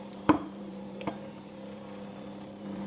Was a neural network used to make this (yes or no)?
yes